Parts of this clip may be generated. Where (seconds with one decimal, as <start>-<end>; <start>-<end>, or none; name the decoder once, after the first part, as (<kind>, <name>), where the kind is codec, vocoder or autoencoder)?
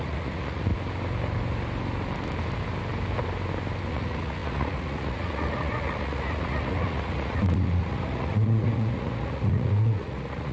0.0-0.7 (vocoder, Vocos); 3.9-10.5